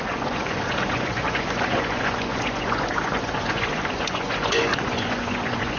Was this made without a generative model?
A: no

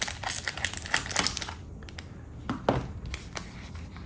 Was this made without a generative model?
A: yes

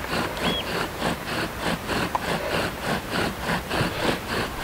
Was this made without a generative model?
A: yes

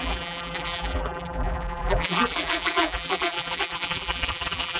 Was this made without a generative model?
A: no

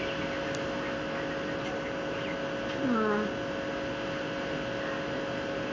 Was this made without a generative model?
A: yes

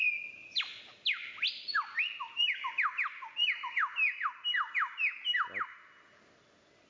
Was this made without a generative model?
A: yes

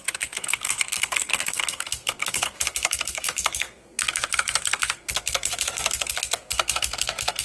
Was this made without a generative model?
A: no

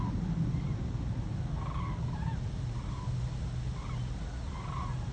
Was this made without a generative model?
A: yes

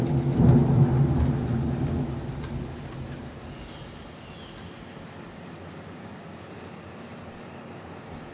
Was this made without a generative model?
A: yes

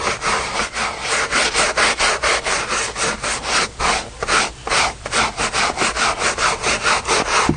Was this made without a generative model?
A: yes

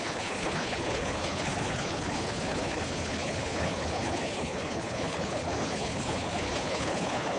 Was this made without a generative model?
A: no